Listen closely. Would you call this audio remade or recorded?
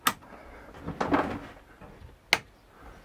recorded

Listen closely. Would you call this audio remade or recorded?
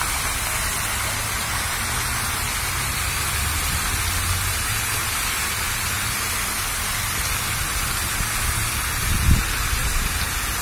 recorded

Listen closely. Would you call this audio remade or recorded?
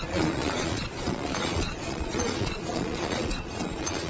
remade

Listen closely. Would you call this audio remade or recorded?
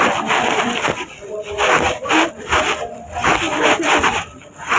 recorded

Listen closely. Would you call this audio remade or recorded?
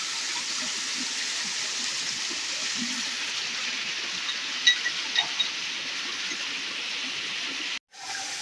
recorded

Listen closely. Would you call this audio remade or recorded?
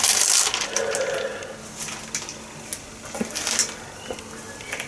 recorded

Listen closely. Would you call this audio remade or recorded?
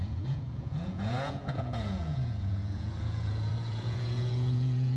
remade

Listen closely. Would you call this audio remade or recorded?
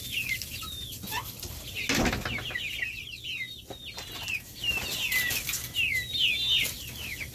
recorded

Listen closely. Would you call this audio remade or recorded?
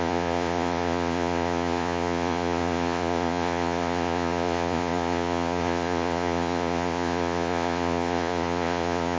remade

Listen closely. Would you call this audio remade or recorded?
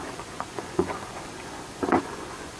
remade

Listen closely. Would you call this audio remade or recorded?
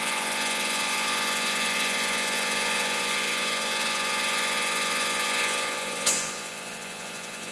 remade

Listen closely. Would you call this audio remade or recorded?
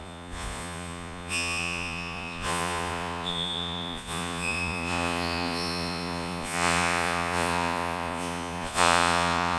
remade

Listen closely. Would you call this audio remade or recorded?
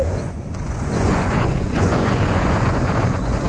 remade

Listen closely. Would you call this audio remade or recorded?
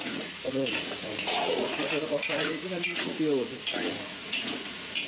remade